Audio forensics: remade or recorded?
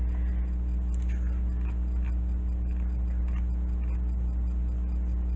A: recorded